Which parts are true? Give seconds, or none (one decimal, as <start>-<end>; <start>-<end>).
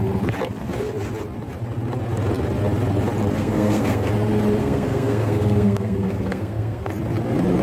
0.0-3.4; 4.1-4.6; 6.9-7.6